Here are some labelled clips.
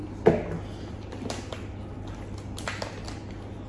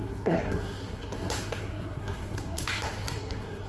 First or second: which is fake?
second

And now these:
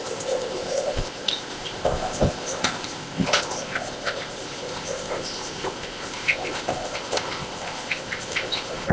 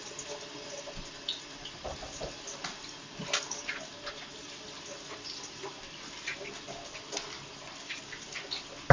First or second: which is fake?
first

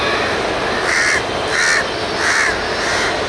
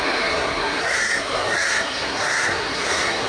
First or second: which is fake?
second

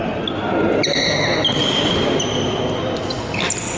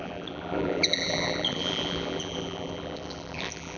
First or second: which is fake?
second